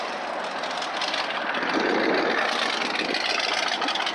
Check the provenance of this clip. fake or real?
real